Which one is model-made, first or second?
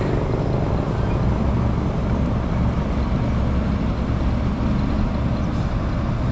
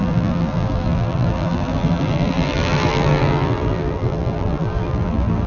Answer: second